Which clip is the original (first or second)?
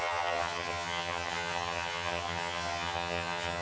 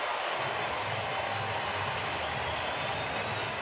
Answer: second